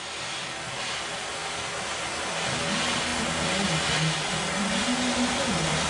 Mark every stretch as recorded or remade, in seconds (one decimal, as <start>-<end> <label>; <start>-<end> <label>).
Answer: 0.0-5.9 recorded